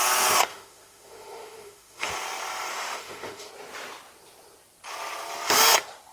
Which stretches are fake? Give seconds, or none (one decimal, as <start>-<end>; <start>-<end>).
0.5-2.1; 2.7-3.5